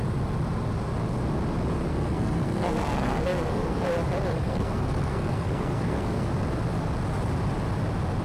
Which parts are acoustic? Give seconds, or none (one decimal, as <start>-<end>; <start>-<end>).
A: 0.0-1.9; 3.9-4.3; 6.3-8.2